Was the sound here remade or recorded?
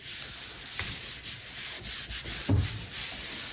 recorded